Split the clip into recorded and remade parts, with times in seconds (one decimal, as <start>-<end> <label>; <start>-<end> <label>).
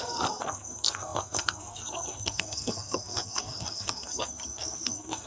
0.0-5.3 remade